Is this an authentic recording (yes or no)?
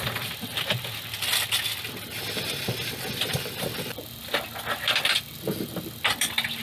yes